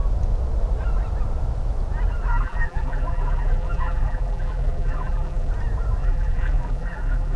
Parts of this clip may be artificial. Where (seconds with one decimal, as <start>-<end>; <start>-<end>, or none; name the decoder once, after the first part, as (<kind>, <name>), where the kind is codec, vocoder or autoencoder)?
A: 2.3-5.5 (vocoder, BigVGAN v2); 6.0-7.4